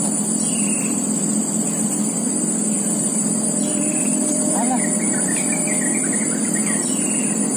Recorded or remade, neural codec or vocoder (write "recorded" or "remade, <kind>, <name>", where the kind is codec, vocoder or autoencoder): remade, vocoder, BigVGAN v2